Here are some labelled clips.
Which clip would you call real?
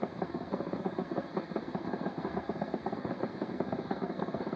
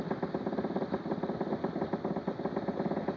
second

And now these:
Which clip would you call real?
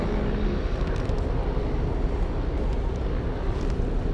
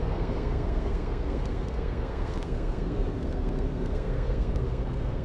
first